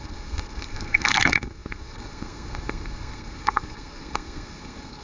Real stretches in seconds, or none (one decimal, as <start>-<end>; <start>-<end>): none